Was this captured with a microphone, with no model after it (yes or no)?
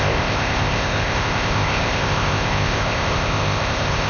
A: no